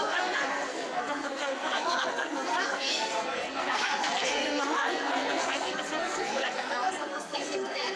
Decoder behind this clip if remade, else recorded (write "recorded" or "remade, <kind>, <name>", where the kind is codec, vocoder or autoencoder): remade, codec, SNAC